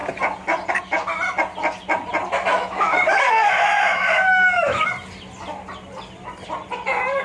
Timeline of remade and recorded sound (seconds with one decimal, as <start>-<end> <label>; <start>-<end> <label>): 0.0-2.5 recorded; 2.5-4.9 remade; 4.9-7.2 recorded

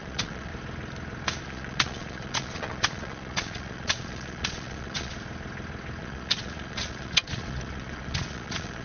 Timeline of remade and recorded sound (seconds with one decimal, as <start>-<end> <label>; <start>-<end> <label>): 0.0-0.5 remade; 0.5-1.4 recorded; 1.4-5.1 remade; 5.1-6.0 recorded; 6.0-8.8 remade

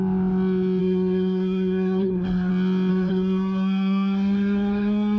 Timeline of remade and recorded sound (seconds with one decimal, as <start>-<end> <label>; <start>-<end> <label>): 0.0-0.8 recorded; 0.8-2.5 remade; 2.5-2.9 recorded; 2.9-5.2 remade

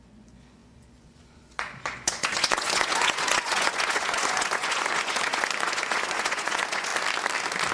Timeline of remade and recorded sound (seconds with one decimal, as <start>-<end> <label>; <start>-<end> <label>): 0.0-6.9 remade; 6.9-7.7 recorded

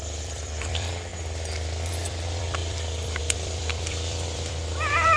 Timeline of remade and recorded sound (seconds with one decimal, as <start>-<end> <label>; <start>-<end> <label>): 0.0-1.1 remade; 1.1-1.9 recorded; 1.9-5.2 remade

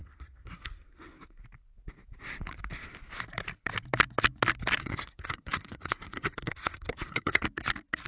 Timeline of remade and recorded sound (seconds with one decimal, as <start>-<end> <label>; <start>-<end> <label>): 0.0-1.4 remade; 1.4-4.8 recorded; 4.8-7.4 remade; 7.4-8.1 recorded

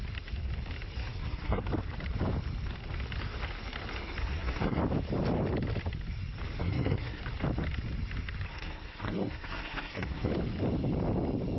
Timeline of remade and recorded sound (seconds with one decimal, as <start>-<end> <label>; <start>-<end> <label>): 0.0-1.0 recorded; 1.0-1.6 remade; 1.6-4.2 recorded; 4.2-4.8 remade; 4.8-6.6 recorded; 6.6-7.2 remade; 7.2-8.5 recorded; 8.5-10.3 remade; 10.3-11.6 recorded